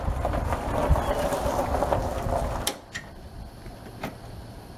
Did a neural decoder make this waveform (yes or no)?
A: no